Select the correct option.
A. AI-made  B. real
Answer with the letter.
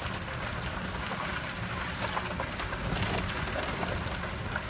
B